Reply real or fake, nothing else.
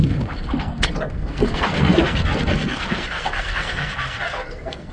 fake